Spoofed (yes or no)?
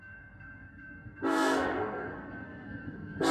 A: yes